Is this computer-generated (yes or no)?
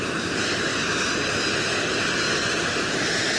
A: no